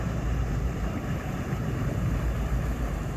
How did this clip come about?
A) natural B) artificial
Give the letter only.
B